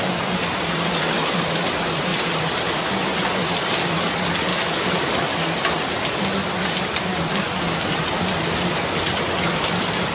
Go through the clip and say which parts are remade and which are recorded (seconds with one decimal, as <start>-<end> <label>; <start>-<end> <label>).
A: 0.0-7.1 remade; 7.1-7.9 recorded; 7.9-10.1 remade